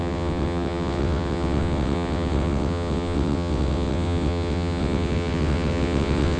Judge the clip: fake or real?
fake